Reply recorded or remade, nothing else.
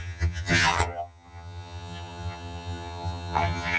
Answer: remade